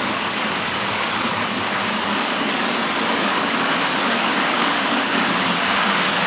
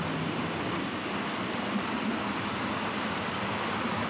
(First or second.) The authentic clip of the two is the second